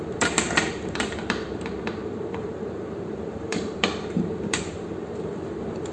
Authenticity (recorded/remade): remade